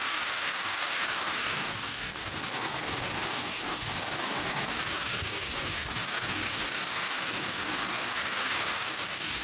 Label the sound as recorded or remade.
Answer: remade